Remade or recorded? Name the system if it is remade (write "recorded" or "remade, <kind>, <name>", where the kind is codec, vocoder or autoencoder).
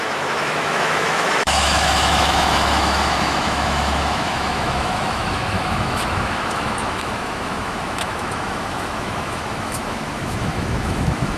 remade, autoencoder, DAC-VAE